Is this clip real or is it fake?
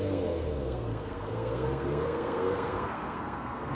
fake